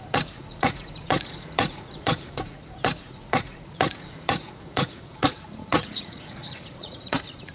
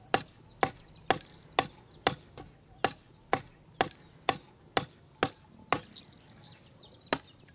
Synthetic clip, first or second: first